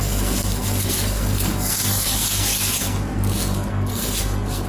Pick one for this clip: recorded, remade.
remade